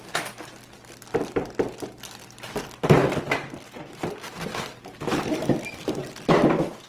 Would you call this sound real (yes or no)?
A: yes